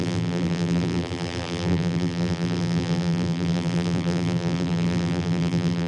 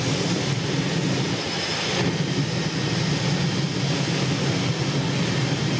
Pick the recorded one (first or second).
second